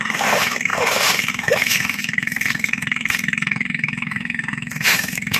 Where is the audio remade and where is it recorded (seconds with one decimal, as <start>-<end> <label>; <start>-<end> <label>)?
0.0-5.4 remade